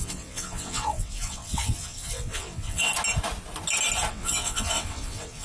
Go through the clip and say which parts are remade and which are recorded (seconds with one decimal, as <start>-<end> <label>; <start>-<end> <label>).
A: 0.0-2.9 remade; 2.9-4.1 recorded; 4.1-5.4 remade